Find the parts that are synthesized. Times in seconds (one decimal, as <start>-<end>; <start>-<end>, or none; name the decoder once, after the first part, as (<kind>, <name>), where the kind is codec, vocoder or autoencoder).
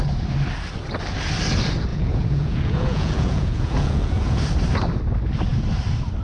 1.9-4.4 (vocoder, Vocos)